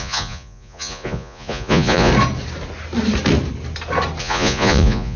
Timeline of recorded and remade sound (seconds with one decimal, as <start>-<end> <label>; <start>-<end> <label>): 0.0-2.1 remade; 2.1-4.2 recorded; 4.2-5.2 remade